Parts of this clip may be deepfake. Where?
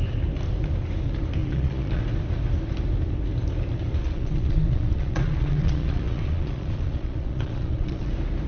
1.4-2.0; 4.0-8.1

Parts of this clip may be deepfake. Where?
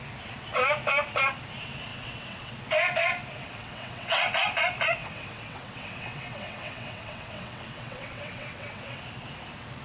1.9-2.5; 3.4-4.3; 5.0-9.0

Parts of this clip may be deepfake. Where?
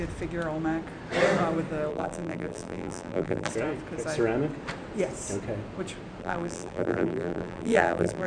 1.9-3.5; 6.2-8.3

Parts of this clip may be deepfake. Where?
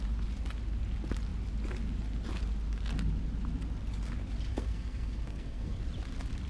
4.5-5.8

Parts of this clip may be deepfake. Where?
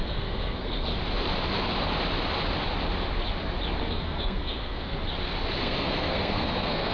0.0-0.9; 3.8-5.0; 5.6-6.9